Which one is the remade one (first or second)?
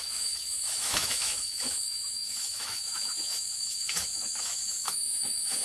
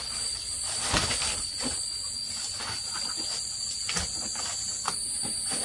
first